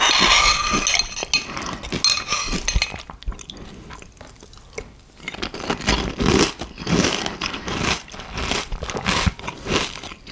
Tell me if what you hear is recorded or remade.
recorded